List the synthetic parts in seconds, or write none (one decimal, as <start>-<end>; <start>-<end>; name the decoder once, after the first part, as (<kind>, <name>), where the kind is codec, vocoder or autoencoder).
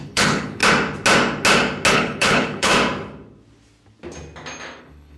0.0-0.6 (codec, HILCodec); 1.9-2.7; 4.8-5.2